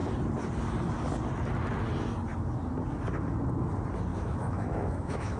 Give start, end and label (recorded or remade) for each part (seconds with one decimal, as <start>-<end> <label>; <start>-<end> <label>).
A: 0.0-4.1 recorded; 4.1-5.4 remade